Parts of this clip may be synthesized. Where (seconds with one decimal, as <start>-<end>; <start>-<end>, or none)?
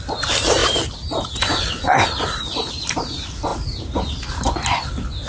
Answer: none